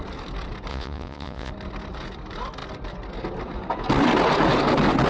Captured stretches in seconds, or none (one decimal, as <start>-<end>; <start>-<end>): 0.0-0.7; 1.5-5.1